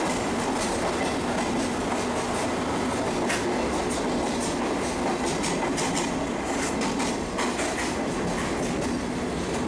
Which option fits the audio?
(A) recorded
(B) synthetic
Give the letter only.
A